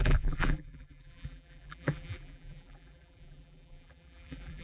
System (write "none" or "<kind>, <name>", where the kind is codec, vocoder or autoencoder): vocoder, BigVGAN v2